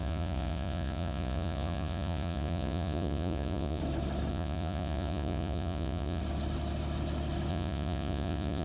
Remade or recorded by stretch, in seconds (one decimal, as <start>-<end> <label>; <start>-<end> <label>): 0.0-3.8 remade; 3.8-4.3 recorded; 4.3-6.2 remade; 6.2-7.5 recorded; 7.5-8.6 remade